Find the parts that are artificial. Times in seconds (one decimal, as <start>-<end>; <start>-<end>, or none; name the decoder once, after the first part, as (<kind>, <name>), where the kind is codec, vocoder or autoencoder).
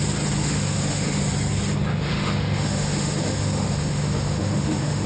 0.4-1.2 (autoencoder, DAC-VAE); 1.9-5.1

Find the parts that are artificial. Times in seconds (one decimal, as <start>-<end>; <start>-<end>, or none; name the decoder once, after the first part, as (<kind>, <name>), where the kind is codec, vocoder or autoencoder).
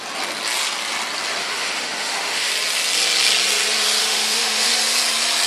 1.4-2.5 (autoencoder, DAC-VAE); 4.0-4.7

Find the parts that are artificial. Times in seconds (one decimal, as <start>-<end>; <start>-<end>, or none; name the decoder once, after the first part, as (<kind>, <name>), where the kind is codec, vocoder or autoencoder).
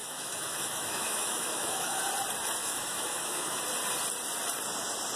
0.0-2.0 (autoencoder, DAC-VAE); 2.6-3.6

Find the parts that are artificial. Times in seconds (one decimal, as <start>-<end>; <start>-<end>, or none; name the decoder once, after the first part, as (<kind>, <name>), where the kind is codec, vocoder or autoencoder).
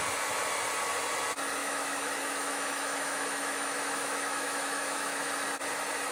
1.6-5.3 (autoencoder, DAC-VAE)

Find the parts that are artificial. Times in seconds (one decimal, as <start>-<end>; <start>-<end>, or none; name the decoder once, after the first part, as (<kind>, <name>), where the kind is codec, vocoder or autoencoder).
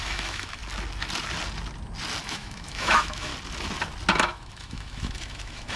0.0-0.6 (autoencoder, DAC-VAE); 2.2-3.3; 4.2-5.8